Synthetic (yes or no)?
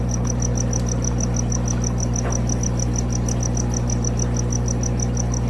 no